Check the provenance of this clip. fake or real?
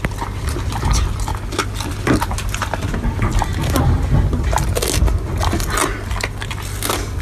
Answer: real